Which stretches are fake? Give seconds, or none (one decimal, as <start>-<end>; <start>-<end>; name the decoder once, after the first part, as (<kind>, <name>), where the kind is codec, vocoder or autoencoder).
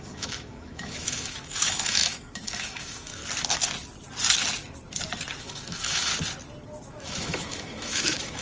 0.0-3.2 (autoencoder, DAC-VAE); 5.4-6.1; 6.9-8.4